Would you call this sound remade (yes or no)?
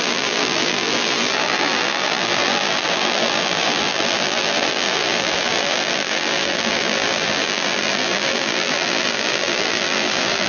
yes